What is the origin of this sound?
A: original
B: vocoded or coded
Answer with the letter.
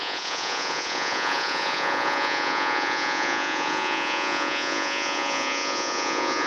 B